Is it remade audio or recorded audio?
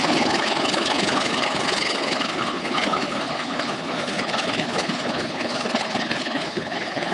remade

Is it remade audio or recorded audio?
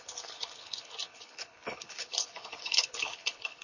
remade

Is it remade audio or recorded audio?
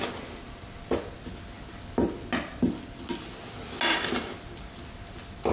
recorded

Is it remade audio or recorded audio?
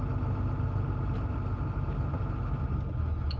recorded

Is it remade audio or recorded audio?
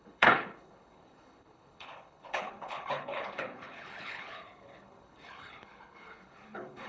remade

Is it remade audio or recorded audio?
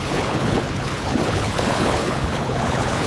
remade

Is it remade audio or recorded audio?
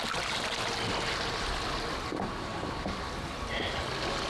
recorded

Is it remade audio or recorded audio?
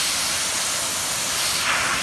recorded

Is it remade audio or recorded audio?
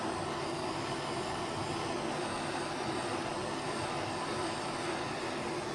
recorded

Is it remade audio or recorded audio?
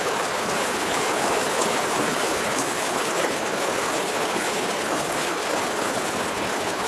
remade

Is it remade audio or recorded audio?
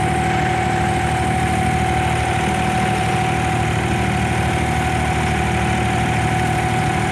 recorded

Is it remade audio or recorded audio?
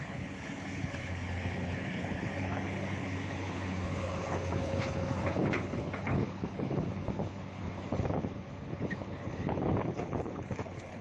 remade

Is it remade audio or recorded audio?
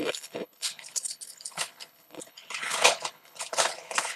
remade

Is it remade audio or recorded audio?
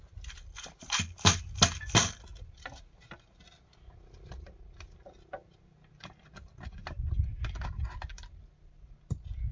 recorded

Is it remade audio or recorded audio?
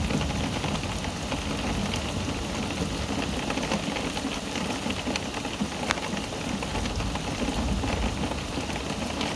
recorded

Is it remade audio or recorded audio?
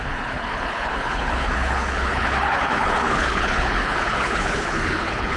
remade